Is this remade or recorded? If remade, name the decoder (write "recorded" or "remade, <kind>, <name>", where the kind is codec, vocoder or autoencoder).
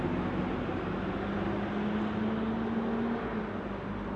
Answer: recorded